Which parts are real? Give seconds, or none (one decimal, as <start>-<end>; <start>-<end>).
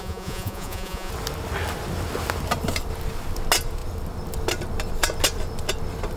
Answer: 1.1-6.2